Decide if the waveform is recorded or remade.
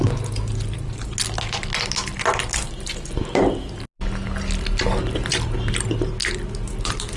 recorded